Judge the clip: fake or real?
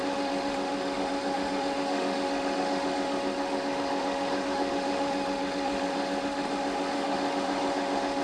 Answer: fake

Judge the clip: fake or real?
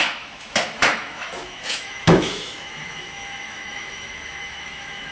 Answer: fake